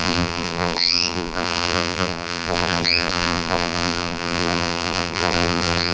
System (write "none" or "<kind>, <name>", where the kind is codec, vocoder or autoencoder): vocoder, BigVGAN v2